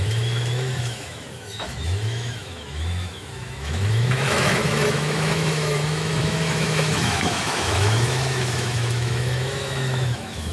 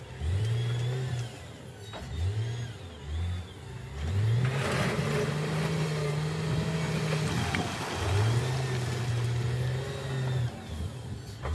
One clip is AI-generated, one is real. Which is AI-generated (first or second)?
first